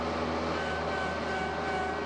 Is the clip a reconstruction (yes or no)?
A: no